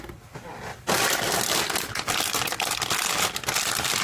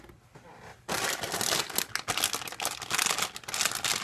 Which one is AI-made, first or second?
first